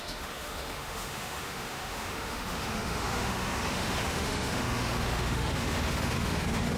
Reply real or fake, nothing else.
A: fake